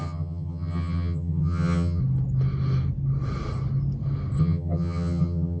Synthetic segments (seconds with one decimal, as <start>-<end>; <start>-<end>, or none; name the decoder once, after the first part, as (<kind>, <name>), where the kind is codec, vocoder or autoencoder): 0.0-2.0 (vocoder, HiFi-GAN); 4.4-5.6